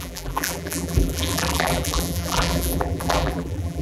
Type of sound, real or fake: fake